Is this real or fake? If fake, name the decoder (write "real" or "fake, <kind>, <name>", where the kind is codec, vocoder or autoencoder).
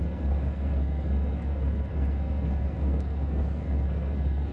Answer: fake, codec, SNAC